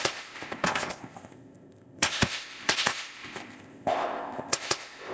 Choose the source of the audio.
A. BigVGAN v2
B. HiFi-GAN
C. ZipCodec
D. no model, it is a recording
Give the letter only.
C